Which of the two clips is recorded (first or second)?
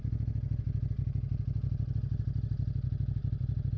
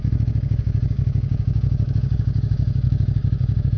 first